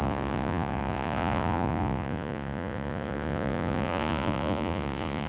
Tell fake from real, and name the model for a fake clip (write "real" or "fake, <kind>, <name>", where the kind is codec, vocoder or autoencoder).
fake, vocoder, Vocos